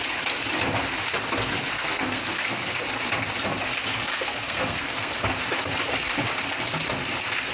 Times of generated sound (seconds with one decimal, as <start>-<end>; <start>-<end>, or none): 1.7-2.8; 4.1-5.1